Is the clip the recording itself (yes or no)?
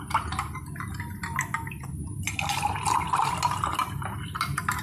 yes